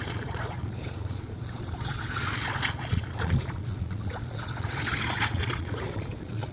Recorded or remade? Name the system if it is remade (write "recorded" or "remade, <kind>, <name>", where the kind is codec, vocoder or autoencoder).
remade, vocoder, Vocos